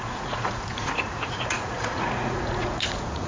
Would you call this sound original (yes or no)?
no